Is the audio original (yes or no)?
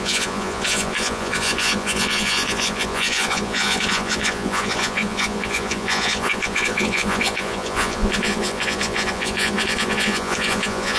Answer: no